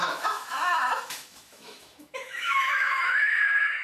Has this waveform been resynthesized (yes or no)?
yes